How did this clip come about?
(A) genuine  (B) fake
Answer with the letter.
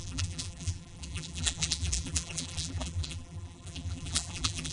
B